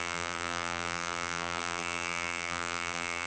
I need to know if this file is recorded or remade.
remade